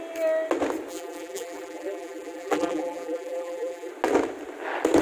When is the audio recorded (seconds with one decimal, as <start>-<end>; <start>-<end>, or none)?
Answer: 0.0-0.9; 3.9-5.0